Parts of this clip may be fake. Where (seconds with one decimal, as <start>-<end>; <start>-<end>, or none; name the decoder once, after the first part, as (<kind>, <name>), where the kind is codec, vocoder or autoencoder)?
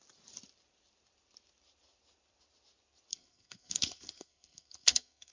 3.1-5.3 (codec, SNAC)